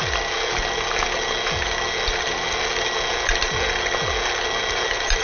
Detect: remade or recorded recorded